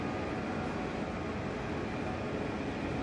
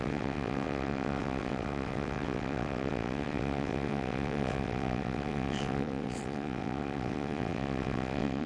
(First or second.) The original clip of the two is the first